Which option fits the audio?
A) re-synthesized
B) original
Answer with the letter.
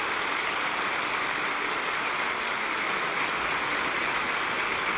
B